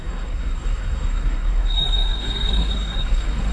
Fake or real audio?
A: fake